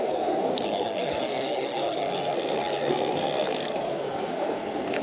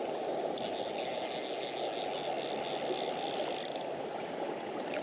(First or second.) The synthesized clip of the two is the first